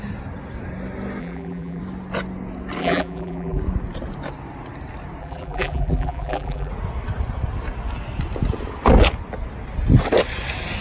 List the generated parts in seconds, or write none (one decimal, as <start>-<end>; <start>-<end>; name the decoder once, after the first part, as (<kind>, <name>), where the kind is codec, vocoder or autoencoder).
1.2-1.8 (vocoder, BigVGAN v2); 2.8-3.6; 5.2-6.7